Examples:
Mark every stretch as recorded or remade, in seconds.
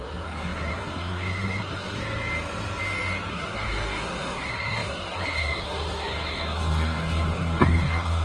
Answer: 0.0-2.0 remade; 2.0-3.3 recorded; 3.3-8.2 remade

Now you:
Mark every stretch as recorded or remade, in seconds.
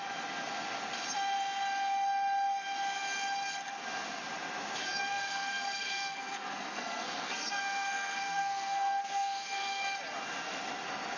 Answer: 0.0-4.8 recorded; 4.8-9.9 remade; 9.9-11.2 recorded